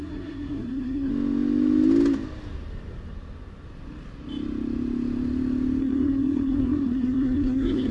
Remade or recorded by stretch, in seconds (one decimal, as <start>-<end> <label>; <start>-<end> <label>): 0.0-1.1 remade; 1.1-5.8 recorded; 5.8-7.9 remade